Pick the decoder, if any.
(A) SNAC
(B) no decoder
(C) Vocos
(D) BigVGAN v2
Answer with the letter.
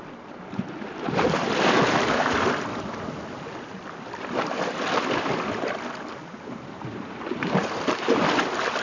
B